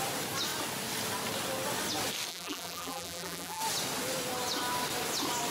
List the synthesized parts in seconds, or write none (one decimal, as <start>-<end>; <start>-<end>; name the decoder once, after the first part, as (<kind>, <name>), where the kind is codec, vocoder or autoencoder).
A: 2.3-3.6 (vocoder, BigVGAN v2)